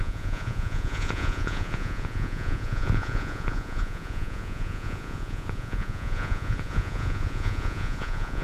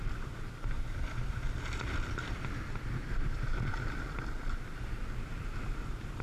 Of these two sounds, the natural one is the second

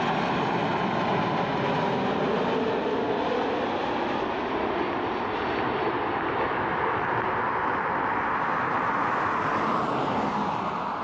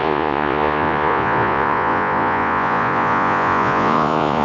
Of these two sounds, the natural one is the first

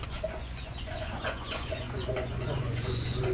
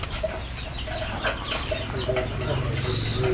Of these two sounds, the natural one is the second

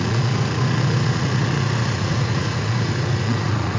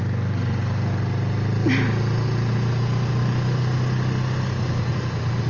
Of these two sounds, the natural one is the second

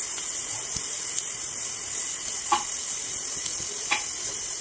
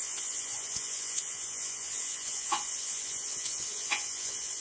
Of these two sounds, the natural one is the first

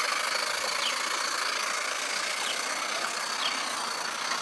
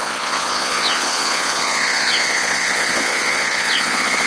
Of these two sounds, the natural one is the first